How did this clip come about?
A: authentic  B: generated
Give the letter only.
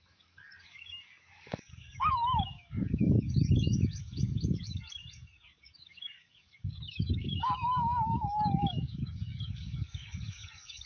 B